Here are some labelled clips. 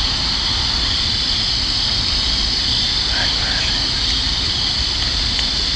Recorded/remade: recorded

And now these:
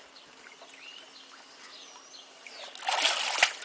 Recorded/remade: recorded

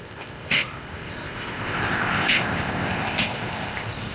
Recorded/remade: remade